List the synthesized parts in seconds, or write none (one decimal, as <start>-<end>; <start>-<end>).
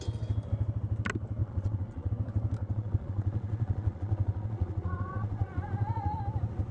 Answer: 1.4-2.1; 2.6-6.2